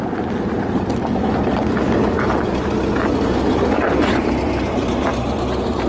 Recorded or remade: recorded